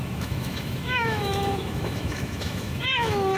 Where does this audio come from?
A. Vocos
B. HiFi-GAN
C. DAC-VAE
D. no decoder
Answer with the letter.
C